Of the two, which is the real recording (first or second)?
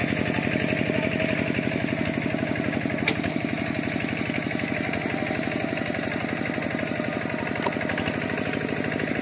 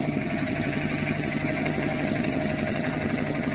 first